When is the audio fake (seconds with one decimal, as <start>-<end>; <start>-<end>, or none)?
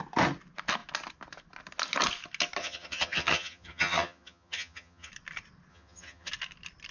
2.6-5.1; 5.7-6.3